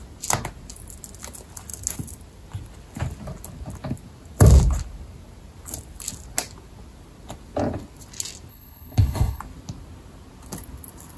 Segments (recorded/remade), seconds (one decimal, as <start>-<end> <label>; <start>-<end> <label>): 0.0-8.5 recorded; 8.5-9.4 remade; 9.4-11.2 recorded